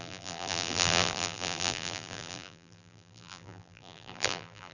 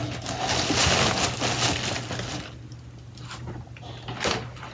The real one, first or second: second